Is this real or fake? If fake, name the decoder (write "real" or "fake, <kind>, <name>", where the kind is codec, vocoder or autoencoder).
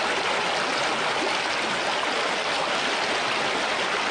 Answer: real